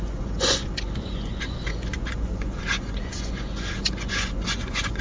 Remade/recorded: remade